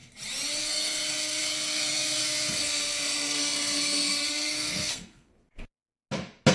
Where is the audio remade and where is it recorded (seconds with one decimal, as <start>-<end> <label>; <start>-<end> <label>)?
0.0-0.6 recorded; 0.6-5.3 remade; 5.3-6.5 recorded